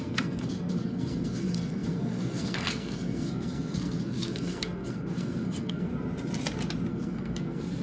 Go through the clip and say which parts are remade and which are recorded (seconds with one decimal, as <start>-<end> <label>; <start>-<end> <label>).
0.0-5.9 remade; 5.9-6.9 recorded; 6.9-7.8 remade

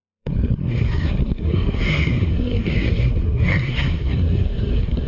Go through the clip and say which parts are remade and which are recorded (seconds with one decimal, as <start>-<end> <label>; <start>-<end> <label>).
0.0-5.1 remade

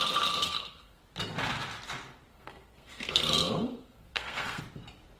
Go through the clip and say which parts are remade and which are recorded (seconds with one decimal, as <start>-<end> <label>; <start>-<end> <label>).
0.0-0.4 recorded; 0.4-1.0 remade; 1.0-2.3 recorded; 2.3-4.6 remade; 4.6-5.2 recorded

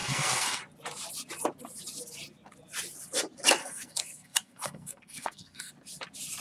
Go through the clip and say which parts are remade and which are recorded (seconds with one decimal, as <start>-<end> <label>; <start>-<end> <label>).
0.0-0.6 remade; 0.6-3.6 recorded; 3.6-5.7 remade; 5.7-6.4 recorded

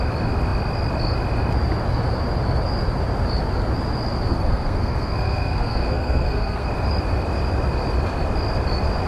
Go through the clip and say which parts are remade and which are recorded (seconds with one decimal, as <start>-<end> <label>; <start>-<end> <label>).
0.0-4.3 recorded; 4.3-6.7 remade; 6.7-9.1 recorded

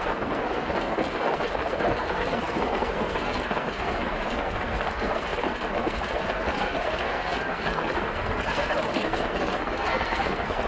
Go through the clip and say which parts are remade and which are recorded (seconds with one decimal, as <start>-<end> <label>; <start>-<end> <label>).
0.0-10.7 remade

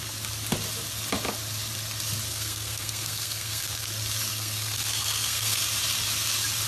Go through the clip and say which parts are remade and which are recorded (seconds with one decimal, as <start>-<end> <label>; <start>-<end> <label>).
0.0-2.3 recorded; 2.3-3.9 remade; 3.9-4.3 recorded; 4.3-5.6 remade; 5.6-6.7 recorded

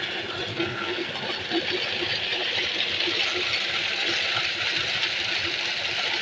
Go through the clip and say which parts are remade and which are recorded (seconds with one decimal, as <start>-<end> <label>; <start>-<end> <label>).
0.0-0.5 recorded; 0.5-1.1 remade; 1.1-6.2 recorded